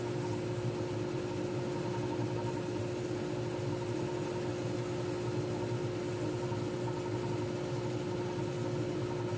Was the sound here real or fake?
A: real